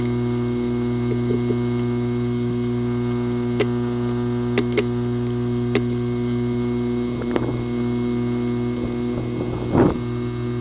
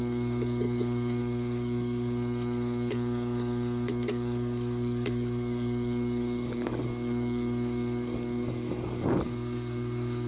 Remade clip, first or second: second